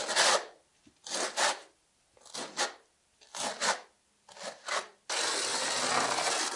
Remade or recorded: recorded